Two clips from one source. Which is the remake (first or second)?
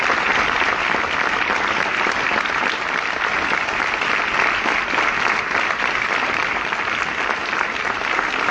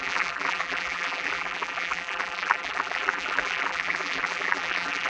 second